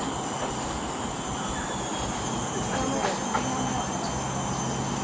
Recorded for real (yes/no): yes